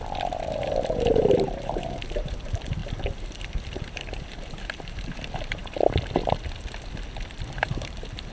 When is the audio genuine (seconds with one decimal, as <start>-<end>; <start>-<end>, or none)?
5.6-7.5